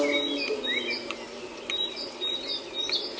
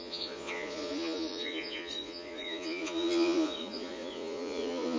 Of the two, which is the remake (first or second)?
second